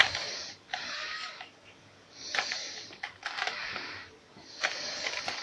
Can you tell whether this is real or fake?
fake